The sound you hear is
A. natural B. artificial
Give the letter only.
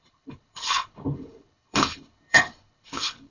B